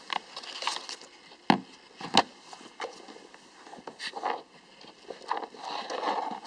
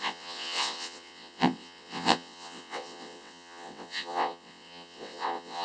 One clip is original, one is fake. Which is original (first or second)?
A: first